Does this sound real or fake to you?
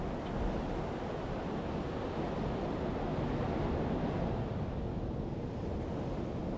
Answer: real